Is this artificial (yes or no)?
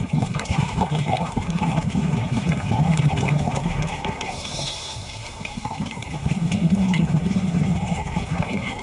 yes